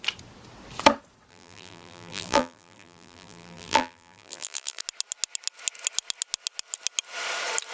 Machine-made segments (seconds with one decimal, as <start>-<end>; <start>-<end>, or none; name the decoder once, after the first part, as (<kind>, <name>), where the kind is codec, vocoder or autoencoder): 1.3-4.8 (vocoder, BigVGAN v2)